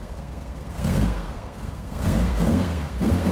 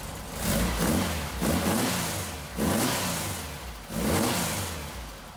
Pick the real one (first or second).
second